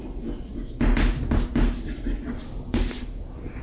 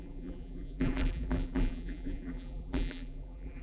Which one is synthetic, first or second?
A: second